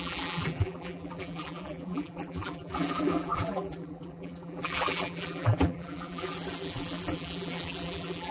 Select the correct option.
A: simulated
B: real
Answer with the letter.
A